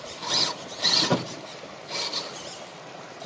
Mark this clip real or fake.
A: real